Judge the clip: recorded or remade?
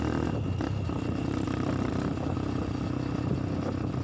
recorded